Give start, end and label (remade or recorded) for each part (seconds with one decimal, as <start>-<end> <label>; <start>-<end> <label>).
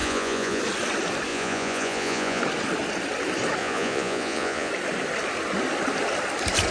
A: 0.0-0.6 remade; 0.6-1.3 recorded; 1.3-2.4 remade; 2.4-3.6 recorded; 3.6-4.7 remade; 4.7-6.7 recorded